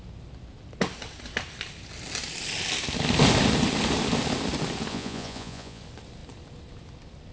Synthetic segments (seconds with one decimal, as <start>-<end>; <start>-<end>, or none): 4.9-5.8